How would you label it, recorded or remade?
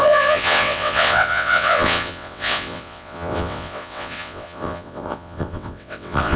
remade